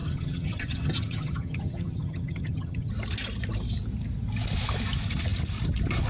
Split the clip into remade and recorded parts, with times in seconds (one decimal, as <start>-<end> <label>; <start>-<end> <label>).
0.0-2.9 remade; 2.9-6.1 recorded